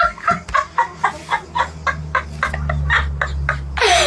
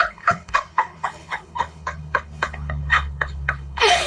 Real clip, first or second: first